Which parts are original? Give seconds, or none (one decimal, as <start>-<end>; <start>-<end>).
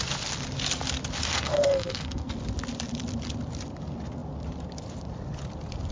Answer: 0.0-1.3; 2.3-5.9